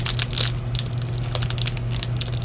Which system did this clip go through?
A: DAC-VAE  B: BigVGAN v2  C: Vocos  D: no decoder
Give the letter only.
D